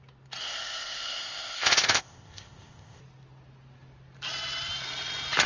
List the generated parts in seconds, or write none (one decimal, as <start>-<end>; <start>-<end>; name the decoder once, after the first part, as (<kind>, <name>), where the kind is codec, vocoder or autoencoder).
0.4-3.0 (codec, ZipCodec)